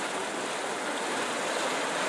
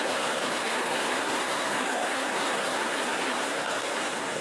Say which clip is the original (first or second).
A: first